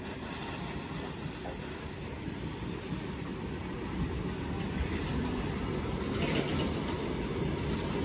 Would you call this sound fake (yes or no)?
no